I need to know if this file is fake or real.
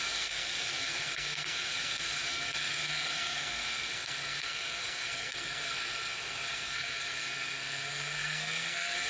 fake